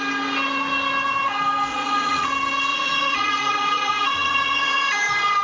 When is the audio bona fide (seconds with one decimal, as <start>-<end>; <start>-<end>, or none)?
0.0-1.7; 2.3-2.7; 4.9-5.4